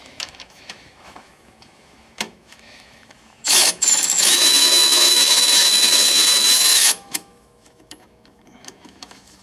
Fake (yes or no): yes